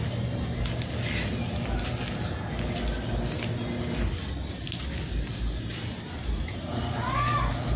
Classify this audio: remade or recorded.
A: recorded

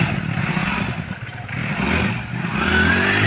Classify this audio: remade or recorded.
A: recorded